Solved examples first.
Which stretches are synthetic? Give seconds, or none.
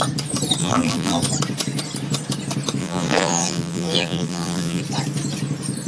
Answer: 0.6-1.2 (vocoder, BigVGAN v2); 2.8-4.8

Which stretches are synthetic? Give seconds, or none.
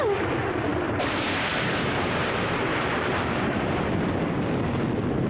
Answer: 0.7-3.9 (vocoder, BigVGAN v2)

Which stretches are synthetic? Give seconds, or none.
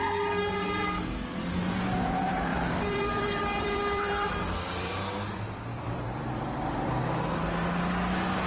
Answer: 2.5-4.9 (vocoder, BigVGAN v2); 5.7-7.0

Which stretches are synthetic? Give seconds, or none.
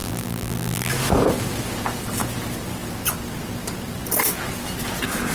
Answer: 0.0-0.9 (vocoder, BigVGAN v2)